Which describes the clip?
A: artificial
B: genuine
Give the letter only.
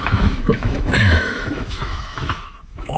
A